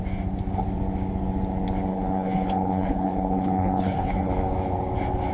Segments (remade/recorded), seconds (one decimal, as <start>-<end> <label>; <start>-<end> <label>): 0.0-1.9 recorded; 1.9-4.3 remade; 4.3-5.3 recorded